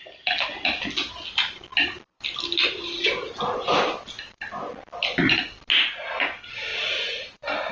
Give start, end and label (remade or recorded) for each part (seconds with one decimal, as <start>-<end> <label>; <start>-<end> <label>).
0.0-7.7 recorded